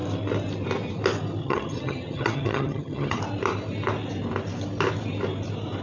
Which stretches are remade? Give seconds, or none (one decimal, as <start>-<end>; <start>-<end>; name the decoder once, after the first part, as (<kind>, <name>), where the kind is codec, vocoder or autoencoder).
1.4-3.2 (vocoder, HiFi-GAN)